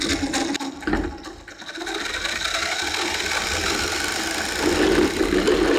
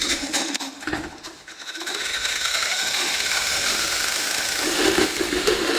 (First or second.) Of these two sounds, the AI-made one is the second